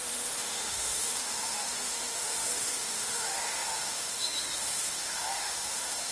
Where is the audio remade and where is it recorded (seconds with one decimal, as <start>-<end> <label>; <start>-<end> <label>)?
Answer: 0.0-6.1 remade